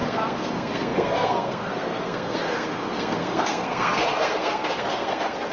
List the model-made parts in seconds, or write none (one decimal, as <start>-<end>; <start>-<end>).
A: 0.0-5.5